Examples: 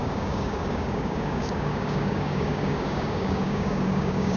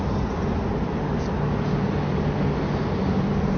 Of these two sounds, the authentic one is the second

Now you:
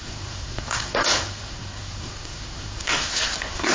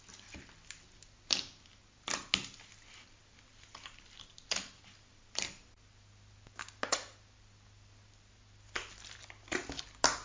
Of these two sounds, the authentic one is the second